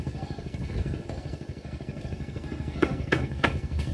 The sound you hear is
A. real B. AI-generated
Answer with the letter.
B